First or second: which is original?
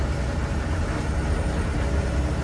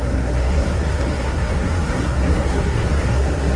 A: first